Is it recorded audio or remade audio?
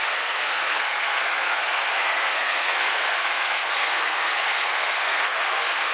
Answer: remade